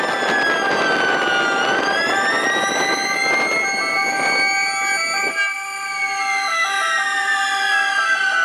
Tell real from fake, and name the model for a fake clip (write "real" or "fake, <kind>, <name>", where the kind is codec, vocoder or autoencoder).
real